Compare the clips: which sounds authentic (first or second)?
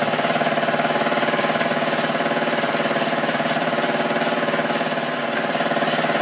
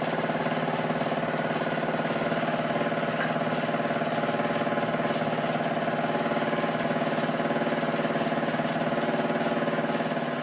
second